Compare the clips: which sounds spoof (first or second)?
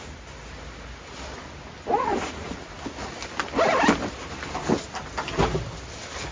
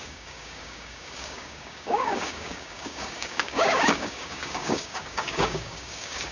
second